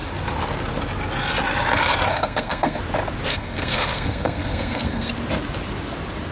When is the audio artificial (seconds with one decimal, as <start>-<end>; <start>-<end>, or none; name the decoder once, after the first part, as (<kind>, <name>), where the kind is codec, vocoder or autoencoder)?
2.1-2.8 (codec, SNAC); 3.3-5.1